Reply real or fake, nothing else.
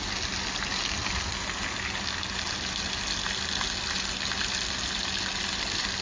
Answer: real